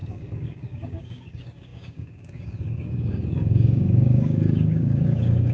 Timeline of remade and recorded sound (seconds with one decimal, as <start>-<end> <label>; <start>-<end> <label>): 0.0-5.5 remade